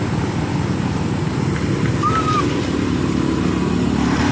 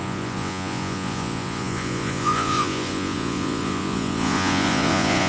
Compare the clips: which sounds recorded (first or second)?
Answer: first